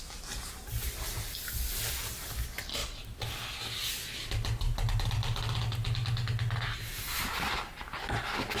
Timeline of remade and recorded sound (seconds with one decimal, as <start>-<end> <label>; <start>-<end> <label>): 0.0-8.6 recorded